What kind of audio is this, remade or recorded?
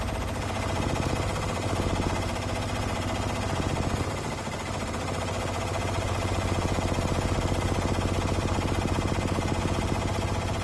recorded